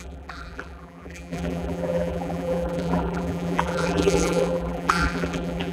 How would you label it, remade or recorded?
remade